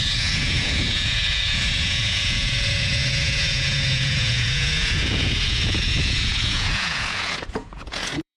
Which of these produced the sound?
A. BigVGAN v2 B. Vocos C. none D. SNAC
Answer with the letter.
B